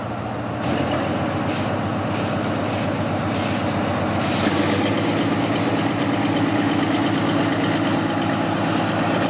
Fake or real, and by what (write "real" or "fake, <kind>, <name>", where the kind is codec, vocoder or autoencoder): real